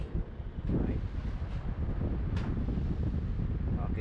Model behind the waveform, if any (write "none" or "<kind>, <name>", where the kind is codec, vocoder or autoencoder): none